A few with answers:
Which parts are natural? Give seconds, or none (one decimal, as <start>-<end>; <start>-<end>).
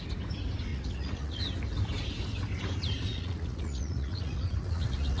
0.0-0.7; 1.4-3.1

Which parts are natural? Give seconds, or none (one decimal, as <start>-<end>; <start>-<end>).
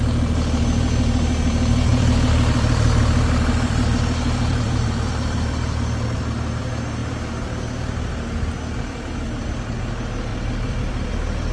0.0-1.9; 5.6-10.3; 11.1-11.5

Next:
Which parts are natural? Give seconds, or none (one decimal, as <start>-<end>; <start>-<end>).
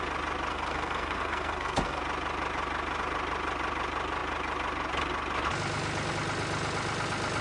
0.0-0.5; 2.0-7.4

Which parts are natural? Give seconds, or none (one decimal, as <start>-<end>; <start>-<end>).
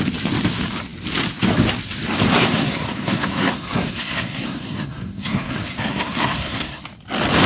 0.0-2.3; 6.8-7.5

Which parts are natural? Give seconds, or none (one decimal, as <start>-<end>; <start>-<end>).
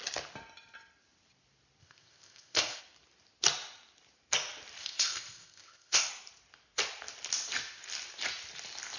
0.0-1.8; 2.8-4.8; 6.1-9.0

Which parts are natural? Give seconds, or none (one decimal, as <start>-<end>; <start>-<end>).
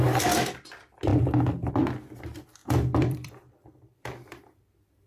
0.0-2.6; 4.6-5.1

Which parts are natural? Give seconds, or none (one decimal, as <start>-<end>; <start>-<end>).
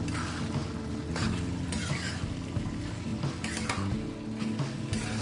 0.0-5.2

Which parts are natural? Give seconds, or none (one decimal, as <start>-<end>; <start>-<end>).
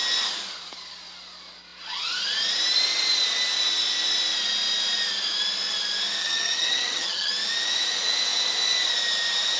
0.0-6.2; 7.3-9.6